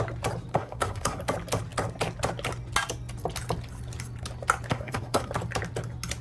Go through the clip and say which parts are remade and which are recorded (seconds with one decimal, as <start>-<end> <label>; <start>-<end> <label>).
0.0-0.5 recorded; 0.5-1.2 remade; 1.2-4.7 recorded; 4.7-5.3 remade; 5.3-6.2 recorded